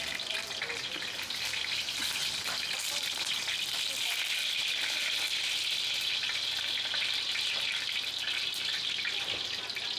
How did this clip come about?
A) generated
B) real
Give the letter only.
B